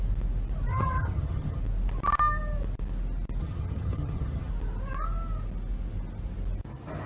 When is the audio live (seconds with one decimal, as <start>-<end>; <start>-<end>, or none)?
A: 0.0-0.7; 1.6-3.4; 4.5-7.1